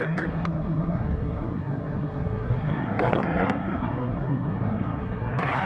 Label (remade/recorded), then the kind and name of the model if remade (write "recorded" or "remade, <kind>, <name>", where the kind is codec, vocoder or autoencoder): remade, codec, SNAC